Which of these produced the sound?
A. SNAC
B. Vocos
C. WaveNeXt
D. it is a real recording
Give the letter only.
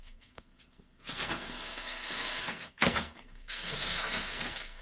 A